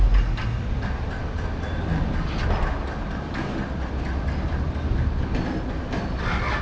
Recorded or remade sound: recorded